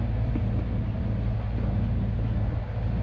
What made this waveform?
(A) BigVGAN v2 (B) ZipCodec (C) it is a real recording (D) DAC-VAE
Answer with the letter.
C